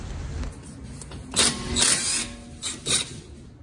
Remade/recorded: recorded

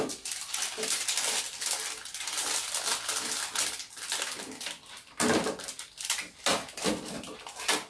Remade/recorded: recorded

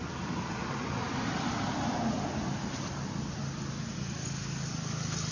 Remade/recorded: recorded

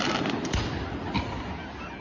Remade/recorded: recorded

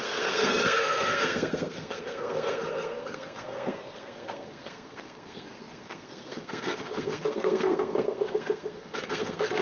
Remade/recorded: remade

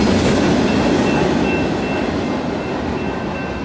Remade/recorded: recorded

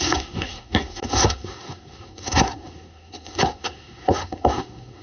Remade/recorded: remade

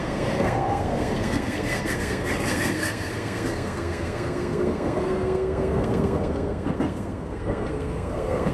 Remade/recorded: remade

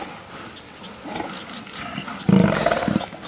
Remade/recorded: recorded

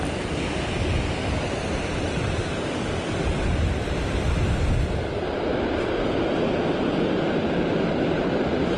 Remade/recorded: recorded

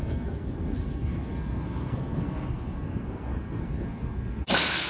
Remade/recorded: remade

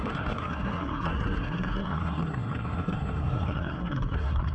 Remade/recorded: remade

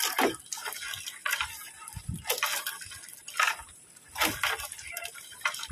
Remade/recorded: recorded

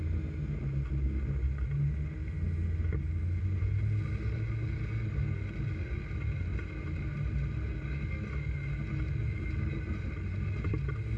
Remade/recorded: recorded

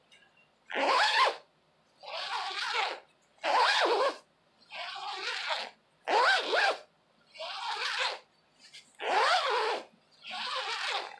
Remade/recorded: recorded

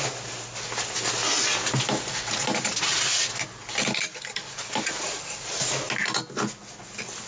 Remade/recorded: recorded